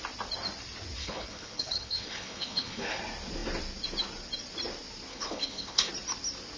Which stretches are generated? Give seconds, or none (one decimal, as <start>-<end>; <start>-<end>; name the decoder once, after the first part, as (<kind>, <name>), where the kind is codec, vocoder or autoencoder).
1.0-3.0 (codec, HILCodec); 5.1-5.9